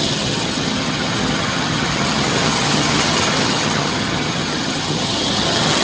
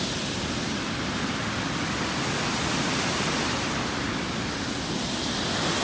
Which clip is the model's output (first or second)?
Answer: first